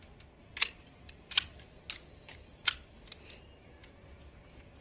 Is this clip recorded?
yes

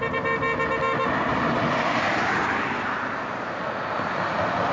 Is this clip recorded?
yes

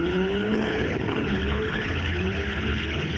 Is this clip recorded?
no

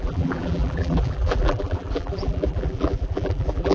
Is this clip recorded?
no